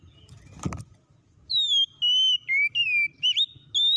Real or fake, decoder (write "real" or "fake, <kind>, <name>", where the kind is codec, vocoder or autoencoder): real